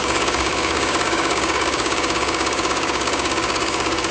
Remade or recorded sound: remade